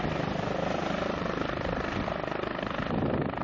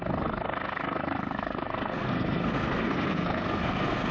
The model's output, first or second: second